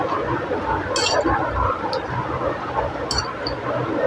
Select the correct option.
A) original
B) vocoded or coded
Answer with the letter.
A